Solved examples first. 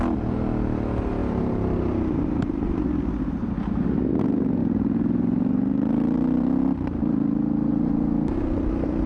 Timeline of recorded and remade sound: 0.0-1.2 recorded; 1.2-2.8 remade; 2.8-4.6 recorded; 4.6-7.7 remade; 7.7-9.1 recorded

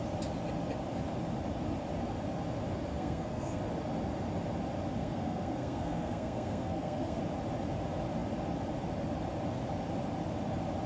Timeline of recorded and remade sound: 0.0-2.9 recorded; 2.9-3.6 remade; 3.6-5.0 recorded; 5.0-7.2 remade; 7.2-10.9 recorded

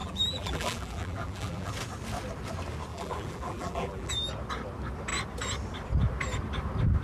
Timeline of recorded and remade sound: 0.0-1.7 remade; 1.7-2.9 recorded; 2.9-4.1 remade; 4.1-7.0 recorded

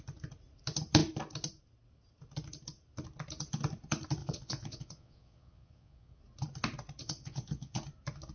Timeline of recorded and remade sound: 0.0-4.2 recorded; 4.2-6.2 remade; 6.2-7.0 recorded; 7.0-7.8 remade; 7.8-8.3 recorded

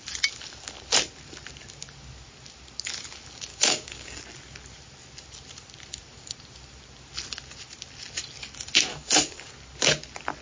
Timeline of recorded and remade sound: 0.0-3.5 recorded; 3.5-4.2 remade; 4.2-8.9 recorded; 8.9-9.5 remade; 9.5-10.4 recorded

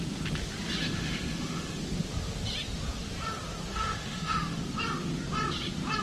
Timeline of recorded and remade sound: 0.0-0.8 recorded; 0.8-1.8 remade; 1.8-3.7 recorded; 3.7-4.6 remade; 4.6-6.0 recorded

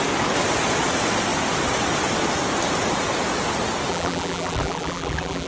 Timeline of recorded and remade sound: 0.0-3.9 recorded; 3.9-5.5 remade